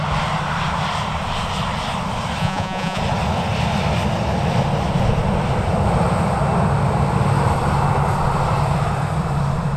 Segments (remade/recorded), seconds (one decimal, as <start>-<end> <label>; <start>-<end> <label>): 0.0-2.4 recorded; 2.4-3.0 remade; 3.0-9.8 recorded